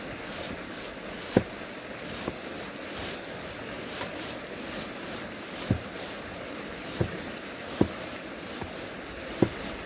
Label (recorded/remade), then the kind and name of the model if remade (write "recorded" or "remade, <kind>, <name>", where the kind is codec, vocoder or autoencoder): recorded